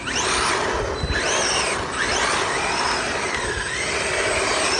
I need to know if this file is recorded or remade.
recorded